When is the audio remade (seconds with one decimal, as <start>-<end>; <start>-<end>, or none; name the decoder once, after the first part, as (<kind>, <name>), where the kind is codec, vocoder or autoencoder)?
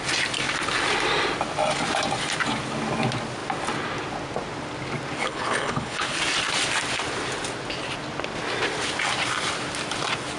5.2-6.2 (codec, HILCodec)